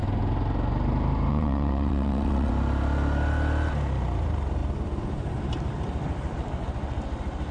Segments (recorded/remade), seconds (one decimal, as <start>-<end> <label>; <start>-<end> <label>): 0.0-1.3 recorded; 1.3-2.5 remade; 2.5-7.5 recorded